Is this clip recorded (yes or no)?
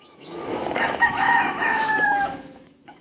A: no